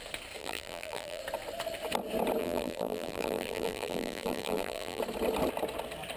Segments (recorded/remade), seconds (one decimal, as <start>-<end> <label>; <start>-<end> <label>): 0.0-0.4 recorded; 0.4-1.2 remade; 1.2-2.4 recorded; 2.4-5.0 remade; 5.0-6.2 recorded